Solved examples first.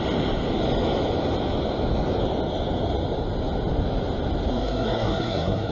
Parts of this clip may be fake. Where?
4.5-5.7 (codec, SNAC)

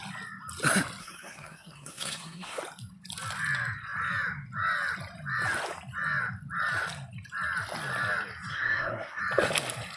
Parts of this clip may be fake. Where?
1.0-2.6 (codec, SNAC); 8.5-9.2

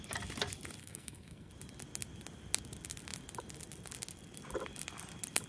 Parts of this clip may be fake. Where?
0.8-1.5 (codec, SNAC)

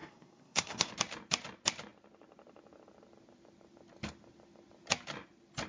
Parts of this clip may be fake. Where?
0.0-0.9 (codec, SNAC)

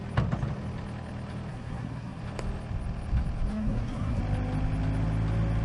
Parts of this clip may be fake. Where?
1.5-2.2 (codec, SNAC); 3.5-4.2

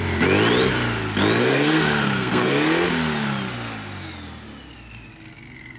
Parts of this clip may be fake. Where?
1.4-2.5 (codec, SNAC)

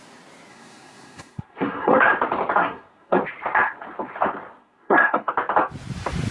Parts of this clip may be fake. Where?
0.5-2.1 (codec, SNAC); 2.6-3.2; 4.6-5.3

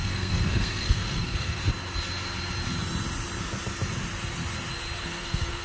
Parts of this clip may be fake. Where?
0.0-1.6 (codec, SNAC); 5.0-5.6